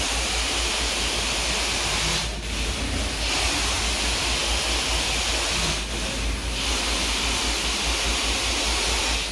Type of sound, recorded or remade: recorded